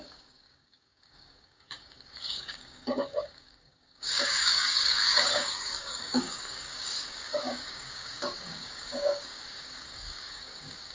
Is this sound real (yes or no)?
no